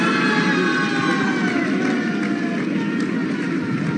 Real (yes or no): yes